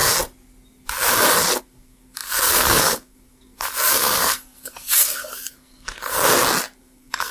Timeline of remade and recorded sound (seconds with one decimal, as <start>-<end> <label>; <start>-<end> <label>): 0.0-1.6 recorded; 1.6-6.3 remade; 6.3-6.8 recorded; 6.8-7.3 remade